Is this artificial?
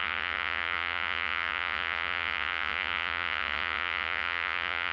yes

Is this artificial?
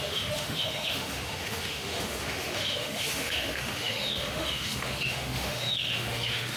yes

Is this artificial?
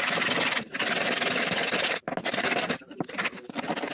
no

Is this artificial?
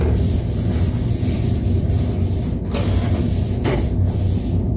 no